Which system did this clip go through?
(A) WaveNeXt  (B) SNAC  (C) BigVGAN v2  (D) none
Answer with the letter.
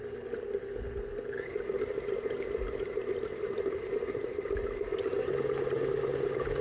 D